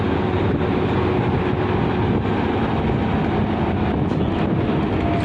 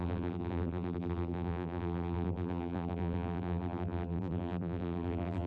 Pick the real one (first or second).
first